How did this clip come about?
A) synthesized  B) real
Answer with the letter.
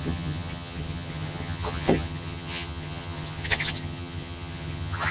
A